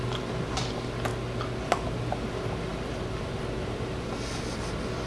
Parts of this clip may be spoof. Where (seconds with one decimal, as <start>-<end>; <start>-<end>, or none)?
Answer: 2.7-3.4